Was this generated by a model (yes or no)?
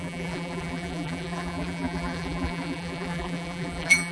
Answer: yes